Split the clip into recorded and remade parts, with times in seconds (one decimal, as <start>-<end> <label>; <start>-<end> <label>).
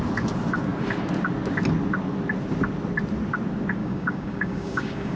0.0-3.8 recorded; 3.8-5.2 remade